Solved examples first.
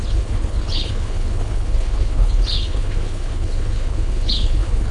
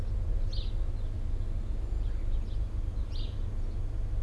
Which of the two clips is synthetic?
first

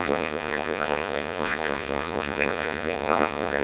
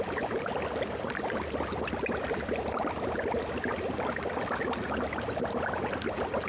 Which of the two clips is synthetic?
first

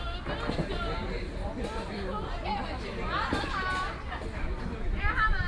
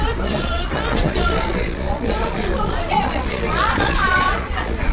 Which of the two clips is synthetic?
second